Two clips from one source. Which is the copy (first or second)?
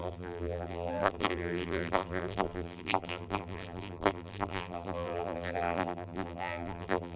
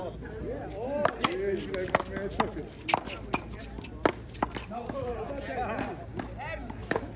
first